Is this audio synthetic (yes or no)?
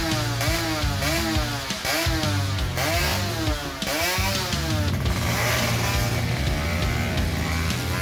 no